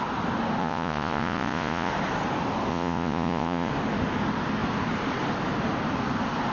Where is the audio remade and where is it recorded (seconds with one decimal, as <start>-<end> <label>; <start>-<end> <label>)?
0.0-0.6 recorded; 0.6-1.9 remade; 1.9-2.7 recorded; 2.7-3.7 remade; 3.7-6.5 recorded